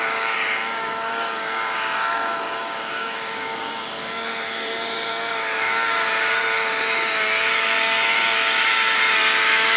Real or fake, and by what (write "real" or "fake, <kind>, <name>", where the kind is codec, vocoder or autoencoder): fake, codec, DAC